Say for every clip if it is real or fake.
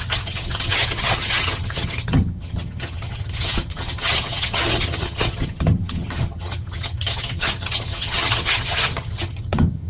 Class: fake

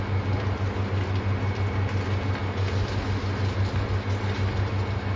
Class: real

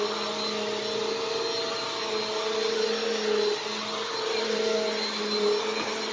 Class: real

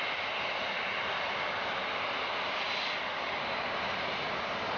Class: real